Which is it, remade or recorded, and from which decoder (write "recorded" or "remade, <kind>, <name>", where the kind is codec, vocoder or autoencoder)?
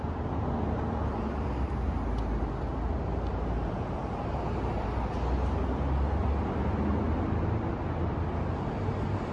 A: recorded